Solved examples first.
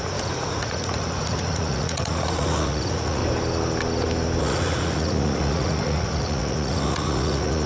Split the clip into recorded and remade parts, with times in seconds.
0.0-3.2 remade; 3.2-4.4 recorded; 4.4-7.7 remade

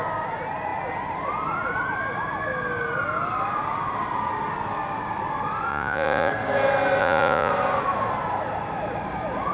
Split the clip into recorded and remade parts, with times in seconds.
0.0-5.7 recorded; 5.7-6.3 remade; 6.3-7.0 recorded; 7.0-7.5 remade; 7.5-9.5 recorded

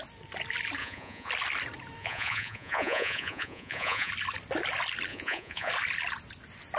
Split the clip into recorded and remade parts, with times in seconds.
0.0-0.8 recorded; 0.8-1.3 remade; 1.3-2.0 recorded; 2.0-4.1 remade; 4.1-5.1 recorded; 5.1-5.7 remade; 5.7-6.8 recorded